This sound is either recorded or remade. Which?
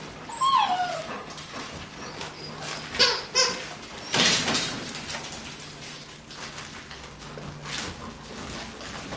recorded